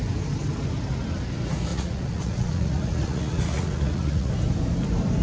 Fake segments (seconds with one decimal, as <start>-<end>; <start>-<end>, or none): 1.7-4.3